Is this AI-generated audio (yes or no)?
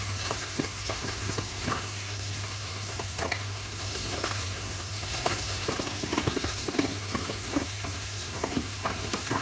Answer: yes